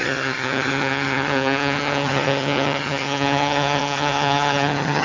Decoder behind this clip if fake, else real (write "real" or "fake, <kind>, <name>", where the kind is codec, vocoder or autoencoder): fake, vocoder, HiFi-GAN